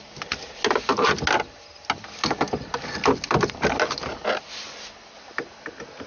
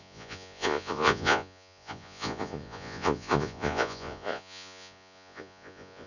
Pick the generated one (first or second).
second